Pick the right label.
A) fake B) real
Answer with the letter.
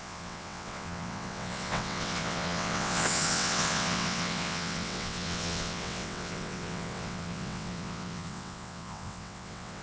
A